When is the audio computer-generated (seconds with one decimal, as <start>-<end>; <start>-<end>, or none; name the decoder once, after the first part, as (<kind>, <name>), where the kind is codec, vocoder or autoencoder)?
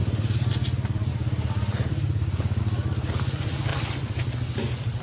0.0-0.5 (vocoder, BigVGAN v2); 1.1-2.6